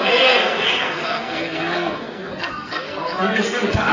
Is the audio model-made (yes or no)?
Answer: yes